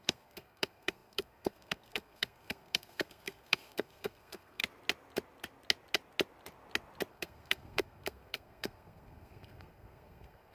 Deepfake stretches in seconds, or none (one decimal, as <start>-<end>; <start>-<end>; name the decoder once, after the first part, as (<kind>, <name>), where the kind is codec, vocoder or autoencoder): 0.0-4.6 (codec, SNAC); 7.1-10.5